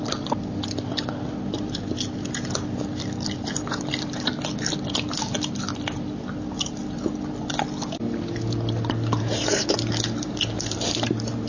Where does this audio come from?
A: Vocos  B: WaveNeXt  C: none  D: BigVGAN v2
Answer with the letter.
C